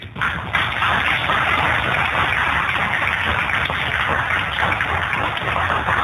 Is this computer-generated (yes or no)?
no